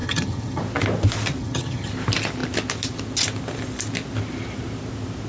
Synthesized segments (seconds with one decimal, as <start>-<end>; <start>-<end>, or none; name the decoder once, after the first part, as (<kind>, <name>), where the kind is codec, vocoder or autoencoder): 0.0-0.6 (vocoder, HiFi-GAN); 1.4-1.9